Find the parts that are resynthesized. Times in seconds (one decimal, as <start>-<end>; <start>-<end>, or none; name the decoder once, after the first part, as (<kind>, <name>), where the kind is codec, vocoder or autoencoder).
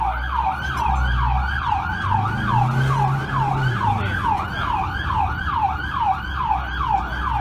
none